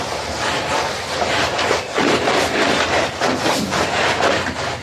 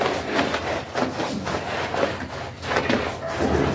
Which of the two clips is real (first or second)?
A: second